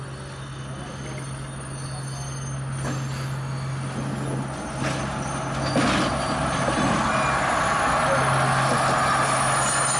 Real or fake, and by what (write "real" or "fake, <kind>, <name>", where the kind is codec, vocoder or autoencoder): real